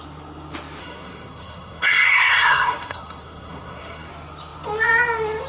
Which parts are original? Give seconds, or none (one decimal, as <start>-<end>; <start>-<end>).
0.0-0.8; 4.1-5.5